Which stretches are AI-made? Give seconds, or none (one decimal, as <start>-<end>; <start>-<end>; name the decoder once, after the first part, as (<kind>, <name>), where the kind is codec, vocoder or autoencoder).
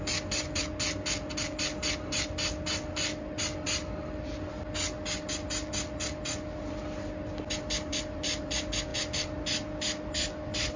none